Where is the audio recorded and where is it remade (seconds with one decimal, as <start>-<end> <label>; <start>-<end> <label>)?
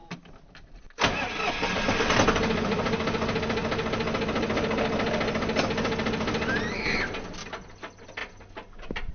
0.0-9.1 recorded